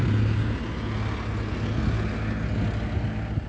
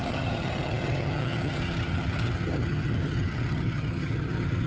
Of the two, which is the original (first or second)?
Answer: first